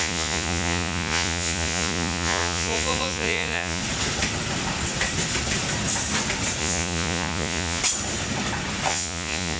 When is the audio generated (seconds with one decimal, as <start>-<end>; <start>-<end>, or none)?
0.0-3.8; 6.6-7.8; 8.9-9.6